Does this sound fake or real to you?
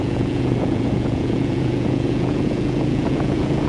fake